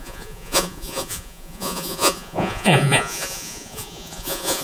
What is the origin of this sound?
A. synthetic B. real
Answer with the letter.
A